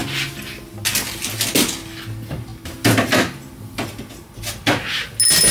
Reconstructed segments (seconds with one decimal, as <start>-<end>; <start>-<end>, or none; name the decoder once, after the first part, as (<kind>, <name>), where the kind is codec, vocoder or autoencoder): none